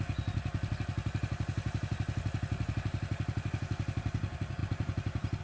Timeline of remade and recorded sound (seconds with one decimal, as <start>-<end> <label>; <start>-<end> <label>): 0.0-5.4 recorded